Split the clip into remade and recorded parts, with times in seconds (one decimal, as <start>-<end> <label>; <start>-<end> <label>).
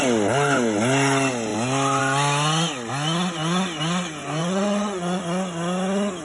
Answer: 0.0-4.4 recorded; 4.4-5.2 remade; 5.2-6.2 recorded